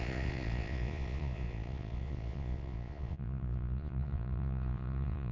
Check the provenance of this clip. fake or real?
fake